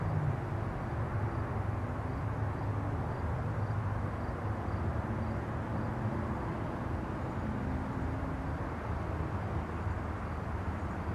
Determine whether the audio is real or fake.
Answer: real